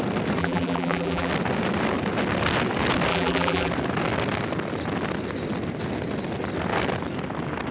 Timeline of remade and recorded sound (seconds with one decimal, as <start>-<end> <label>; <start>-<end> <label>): 0.0-0.4 recorded; 0.4-1.3 remade; 1.3-3.1 recorded; 3.1-3.7 remade; 3.7-7.7 recorded